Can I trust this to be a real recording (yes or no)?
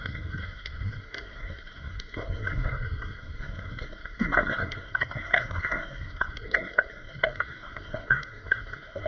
no